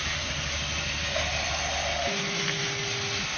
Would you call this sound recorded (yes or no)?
yes